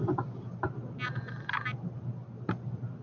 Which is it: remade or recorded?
recorded